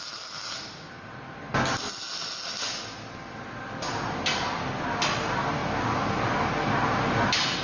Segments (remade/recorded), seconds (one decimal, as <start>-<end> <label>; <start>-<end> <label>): 0.0-7.6 recorded